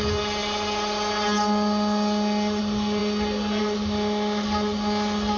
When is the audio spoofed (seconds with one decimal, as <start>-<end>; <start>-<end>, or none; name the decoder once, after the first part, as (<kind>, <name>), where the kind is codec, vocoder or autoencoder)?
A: none